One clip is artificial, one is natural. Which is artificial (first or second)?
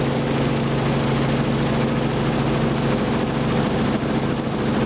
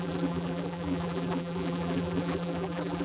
second